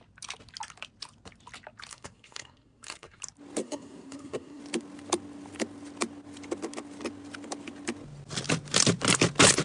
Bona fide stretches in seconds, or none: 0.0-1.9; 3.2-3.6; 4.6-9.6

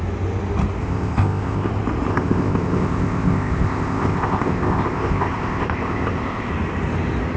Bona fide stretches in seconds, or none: 0.0-0.8; 1.7-2.1; 6.5-7.4

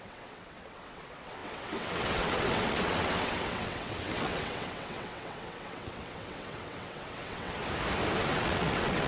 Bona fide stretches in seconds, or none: 7.6-8.2